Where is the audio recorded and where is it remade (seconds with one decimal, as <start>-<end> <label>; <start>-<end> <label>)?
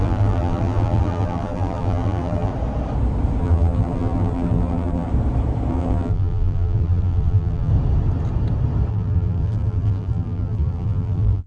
0.0-2.5 remade; 2.5-3.4 recorded; 3.4-5.1 remade; 5.1-5.7 recorded; 5.7-7.7 remade; 7.7-8.9 recorded; 8.9-11.5 remade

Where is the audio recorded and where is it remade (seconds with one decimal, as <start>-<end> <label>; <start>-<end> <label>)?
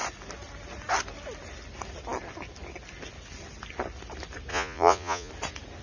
0.0-4.5 recorded; 4.5-5.3 remade; 5.3-5.8 recorded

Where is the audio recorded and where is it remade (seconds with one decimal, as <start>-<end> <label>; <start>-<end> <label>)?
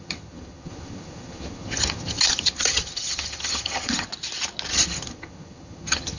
0.0-4.1 remade; 4.1-4.7 recorded; 4.7-6.2 remade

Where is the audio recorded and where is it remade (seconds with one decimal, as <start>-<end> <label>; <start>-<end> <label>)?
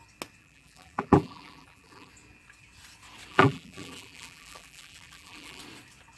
0.0-0.4 recorded; 0.4-2.1 remade; 2.1-3.3 recorded; 3.3-5.6 remade; 5.6-6.2 recorded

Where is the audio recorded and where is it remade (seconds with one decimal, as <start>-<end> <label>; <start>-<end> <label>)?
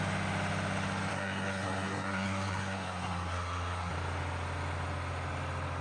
0.0-1.1 recorded; 1.1-3.9 remade; 3.9-5.8 recorded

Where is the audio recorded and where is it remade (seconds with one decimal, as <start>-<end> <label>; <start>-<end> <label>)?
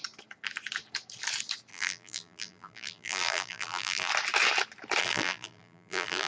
0.0-1.7 recorded; 1.7-4.1 remade; 4.1-5.0 recorded; 5.0-6.3 remade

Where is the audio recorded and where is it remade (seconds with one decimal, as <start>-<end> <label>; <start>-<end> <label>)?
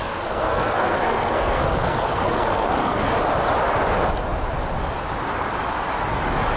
0.0-3.0 remade; 3.0-6.6 recorded